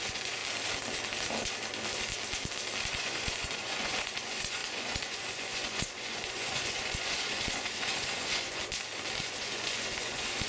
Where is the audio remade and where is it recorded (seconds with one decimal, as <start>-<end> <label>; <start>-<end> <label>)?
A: 0.0-0.4 remade; 0.4-2.9 recorded; 2.9-8.6 remade; 8.6-9.2 recorded; 9.2-10.5 remade